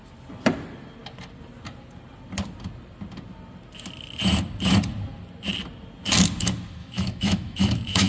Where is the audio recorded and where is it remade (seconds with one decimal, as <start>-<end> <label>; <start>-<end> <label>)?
0.0-6.8 recorded; 6.8-8.1 remade